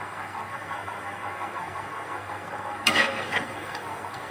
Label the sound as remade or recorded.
remade